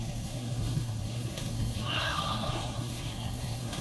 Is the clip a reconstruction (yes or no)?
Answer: yes